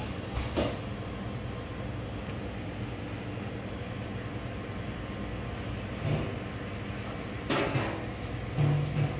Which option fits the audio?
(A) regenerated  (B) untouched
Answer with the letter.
B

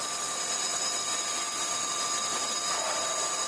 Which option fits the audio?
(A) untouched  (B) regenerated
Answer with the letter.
A